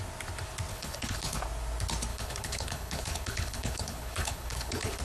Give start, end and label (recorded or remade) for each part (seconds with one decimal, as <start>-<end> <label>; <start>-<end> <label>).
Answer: 0.0-0.7 recorded; 0.7-1.4 remade; 1.4-2.1 recorded; 2.1-5.0 remade